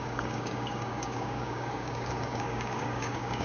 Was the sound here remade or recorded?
remade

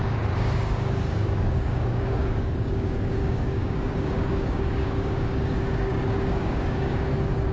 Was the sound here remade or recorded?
remade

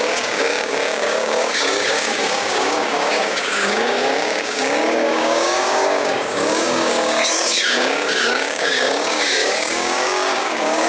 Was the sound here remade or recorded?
remade